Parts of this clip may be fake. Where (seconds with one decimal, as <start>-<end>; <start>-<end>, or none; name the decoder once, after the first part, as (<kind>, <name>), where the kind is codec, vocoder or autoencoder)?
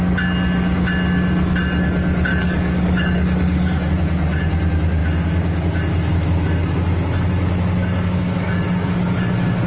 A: 2.3-3.9 (codec, DAC)